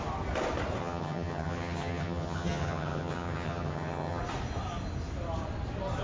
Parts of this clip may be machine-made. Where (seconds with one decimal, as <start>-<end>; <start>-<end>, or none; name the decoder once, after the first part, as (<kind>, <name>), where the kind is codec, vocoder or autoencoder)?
0.8-4.2 (vocoder, HiFi-GAN)